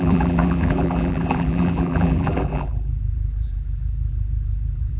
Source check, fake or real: fake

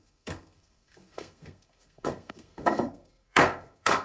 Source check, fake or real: fake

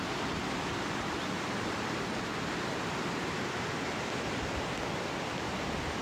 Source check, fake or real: real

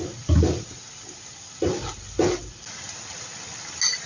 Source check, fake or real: real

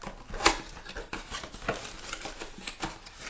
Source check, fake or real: real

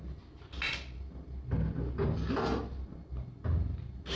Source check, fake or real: real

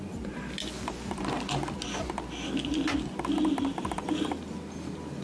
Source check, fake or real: real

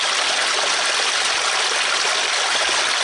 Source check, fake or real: real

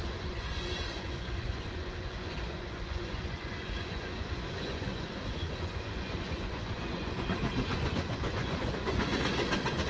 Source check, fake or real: fake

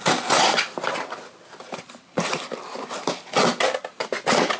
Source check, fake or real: real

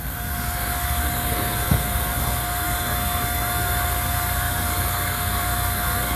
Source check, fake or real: fake